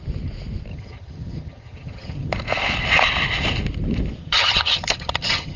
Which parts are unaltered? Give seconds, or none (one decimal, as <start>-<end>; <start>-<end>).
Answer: 0.0-0.7; 2.3-4.2